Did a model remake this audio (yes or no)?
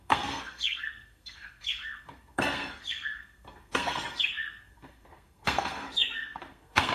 yes